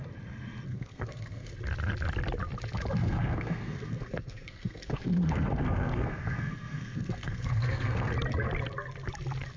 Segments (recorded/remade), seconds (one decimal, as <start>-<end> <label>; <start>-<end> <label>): 0.0-0.7 recorded; 0.7-1.5 remade; 1.5-3.0 recorded; 3.0-8.1 remade; 8.1-9.6 recorded